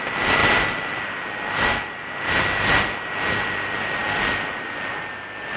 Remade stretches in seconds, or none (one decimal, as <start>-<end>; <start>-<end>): none